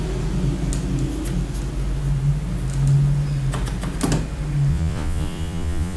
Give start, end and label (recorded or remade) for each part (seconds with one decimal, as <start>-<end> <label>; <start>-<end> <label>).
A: 0.0-4.7 recorded; 4.7-6.0 remade